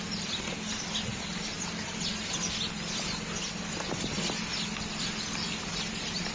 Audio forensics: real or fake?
real